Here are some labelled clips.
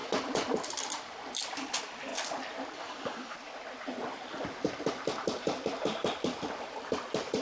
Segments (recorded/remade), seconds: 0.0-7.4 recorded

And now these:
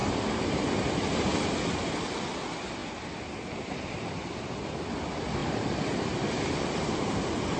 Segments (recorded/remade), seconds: 0.0-0.6 remade; 0.6-5.4 recorded; 5.4-6.7 remade; 6.7-7.6 recorded

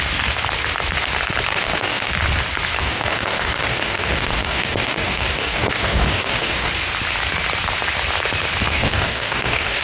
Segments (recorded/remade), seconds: 0.0-1.5 recorded; 1.5-2.1 remade; 2.1-2.8 recorded; 2.8-6.7 remade; 6.7-8.7 recorded; 8.7-9.8 remade

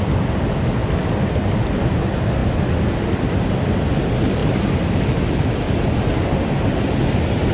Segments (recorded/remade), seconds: 0.0-4.4 recorded; 4.4-5.5 remade; 5.5-7.5 recorded

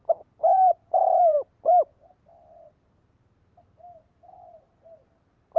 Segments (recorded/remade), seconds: 0.0-0.5 recorded; 0.5-1.5 remade; 1.5-5.6 recorded